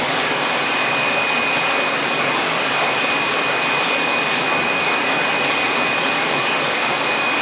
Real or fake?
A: fake